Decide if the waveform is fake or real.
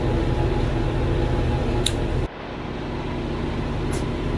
real